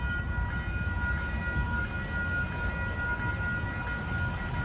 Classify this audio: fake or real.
real